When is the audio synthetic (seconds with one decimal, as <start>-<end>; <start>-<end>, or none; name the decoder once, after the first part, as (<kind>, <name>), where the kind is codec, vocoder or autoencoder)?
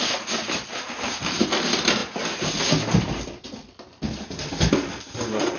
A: none